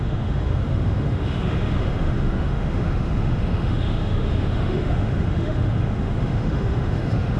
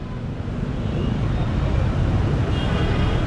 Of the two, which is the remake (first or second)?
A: first